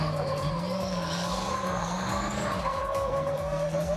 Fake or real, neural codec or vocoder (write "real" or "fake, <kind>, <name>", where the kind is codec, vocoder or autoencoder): fake, codec, SNAC